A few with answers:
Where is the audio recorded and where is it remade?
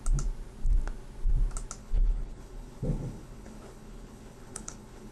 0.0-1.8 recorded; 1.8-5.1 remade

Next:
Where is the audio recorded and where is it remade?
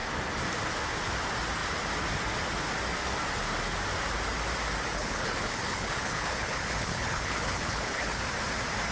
0.0-4.9 recorded; 4.9-8.2 remade; 8.2-8.9 recorded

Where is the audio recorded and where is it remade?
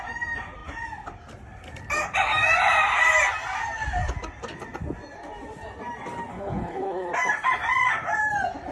0.0-6.3 recorded; 6.3-7.1 remade; 7.1-8.7 recorded